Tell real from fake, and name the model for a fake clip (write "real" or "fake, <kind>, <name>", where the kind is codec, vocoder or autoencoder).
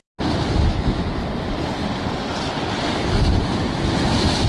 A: real